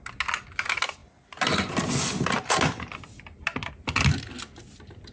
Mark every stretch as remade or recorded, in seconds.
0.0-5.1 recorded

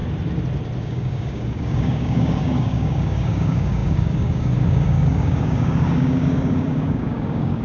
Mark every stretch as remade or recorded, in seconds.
0.0-0.8 recorded; 0.8-7.6 remade

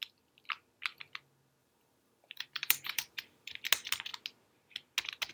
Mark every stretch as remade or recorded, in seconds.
0.0-1.6 recorded; 1.6-3.6 remade; 3.6-5.3 recorded

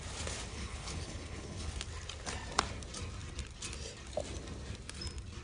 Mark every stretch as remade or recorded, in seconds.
0.0-0.5 recorded; 0.5-1.7 remade; 1.7-5.4 recorded

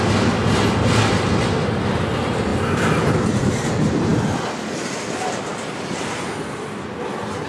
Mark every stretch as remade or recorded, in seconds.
0.0-7.5 recorded